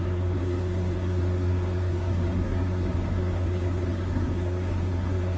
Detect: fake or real fake